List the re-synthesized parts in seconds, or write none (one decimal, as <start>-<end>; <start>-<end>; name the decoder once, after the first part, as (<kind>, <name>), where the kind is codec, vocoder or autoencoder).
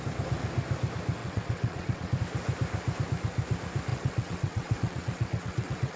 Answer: 1.2-2.2 (vocoder, WaveNeXt); 3.9-6.0